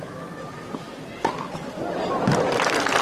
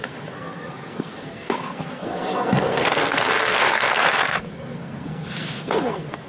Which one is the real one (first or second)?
first